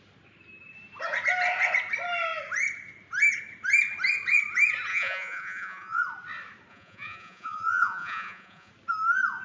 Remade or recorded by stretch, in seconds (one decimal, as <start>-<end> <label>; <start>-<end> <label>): 0.0-4.9 recorded; 4.9-6.0 remade; 6.0-6.7 recorded; 6.7-8.7 remade; 8.7-9.4 recorded